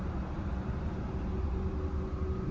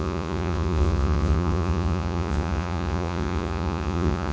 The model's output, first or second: second